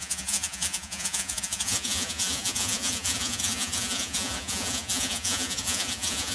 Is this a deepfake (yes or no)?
yes